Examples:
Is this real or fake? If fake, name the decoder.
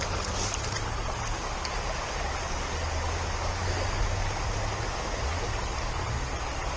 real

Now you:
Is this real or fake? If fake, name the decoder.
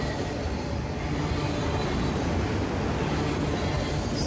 real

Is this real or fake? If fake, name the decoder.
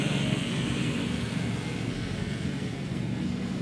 fake, codec, SNAC